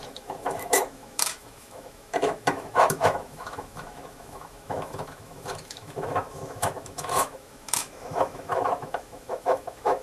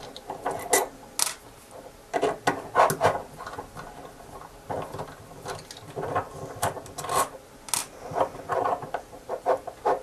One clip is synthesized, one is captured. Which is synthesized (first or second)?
first